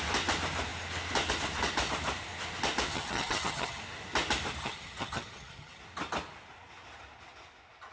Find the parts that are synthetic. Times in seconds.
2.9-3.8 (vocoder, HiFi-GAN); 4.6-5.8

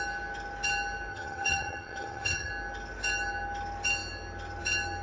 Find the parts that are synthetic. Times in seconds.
1.1-2.5 (vocoder, HiFi-GAN)

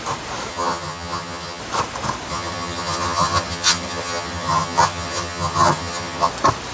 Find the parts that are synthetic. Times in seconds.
0.5-1.6 (vocoder, HiFi-GAN); 2.3-6.3

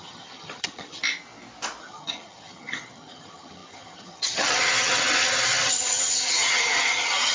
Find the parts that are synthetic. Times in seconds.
0.0-1.0 (vocoder, HiFi-GAN); 1.8-7.3

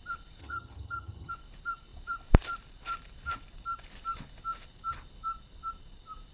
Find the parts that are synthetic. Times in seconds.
0.4-1.3 (vocoder, HiFi-GAN)